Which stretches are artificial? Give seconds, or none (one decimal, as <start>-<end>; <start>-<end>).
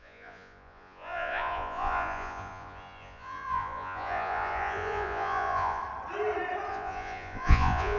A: 0.0-5.8; 6.7-8.0